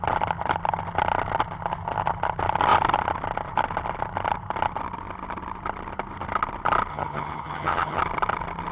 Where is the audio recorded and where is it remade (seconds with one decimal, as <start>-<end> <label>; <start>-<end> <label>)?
0.0-6.9 recorded; 6.9-8.0 remade; 8.0-8.7 recorded